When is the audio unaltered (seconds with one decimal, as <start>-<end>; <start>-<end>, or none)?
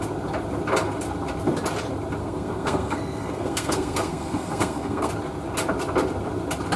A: 0.0-2.2; 5.1-6.8